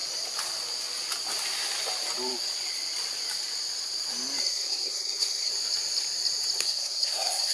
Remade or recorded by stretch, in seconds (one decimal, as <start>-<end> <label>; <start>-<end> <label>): 0.0-4.5 recorded; 4.5-5.5 remade; 5.5-6.6 recorded; 6.6-7.5 remade